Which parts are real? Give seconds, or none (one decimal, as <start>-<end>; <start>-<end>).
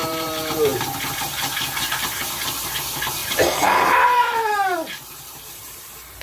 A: none